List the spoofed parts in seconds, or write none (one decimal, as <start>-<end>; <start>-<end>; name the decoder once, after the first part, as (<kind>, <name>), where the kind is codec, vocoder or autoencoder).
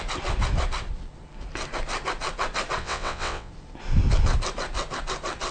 2.8-3.5 (vocoder, WaveNeXt)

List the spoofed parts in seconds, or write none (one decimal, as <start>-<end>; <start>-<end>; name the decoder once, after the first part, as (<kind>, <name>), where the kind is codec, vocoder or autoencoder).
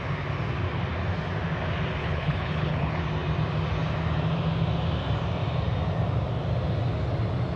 2.0-3.0 (codec, HILCodec)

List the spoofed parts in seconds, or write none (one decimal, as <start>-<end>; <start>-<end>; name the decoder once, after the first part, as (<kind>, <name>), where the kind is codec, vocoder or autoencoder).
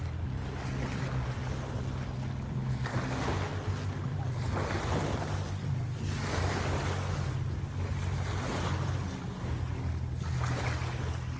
none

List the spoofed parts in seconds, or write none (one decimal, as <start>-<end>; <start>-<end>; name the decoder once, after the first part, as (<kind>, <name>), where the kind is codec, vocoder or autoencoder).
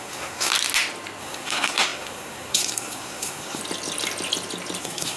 0.0-0.5 (codec, SNAC); 1.2-3.6; 4.8-5.2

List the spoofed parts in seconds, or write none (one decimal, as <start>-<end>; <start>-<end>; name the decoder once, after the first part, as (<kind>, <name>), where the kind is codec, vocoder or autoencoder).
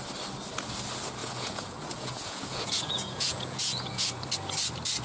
1.2-4.2 (vocoder, Vocos)